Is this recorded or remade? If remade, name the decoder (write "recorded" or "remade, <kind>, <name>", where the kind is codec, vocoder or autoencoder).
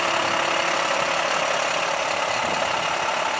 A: recorded